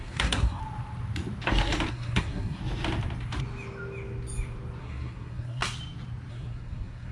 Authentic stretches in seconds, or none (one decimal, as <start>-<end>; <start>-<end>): 0.6-1.9; 2.6-4.8; 5.6-6.3